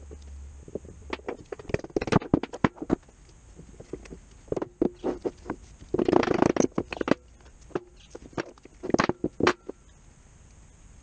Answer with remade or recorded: recorded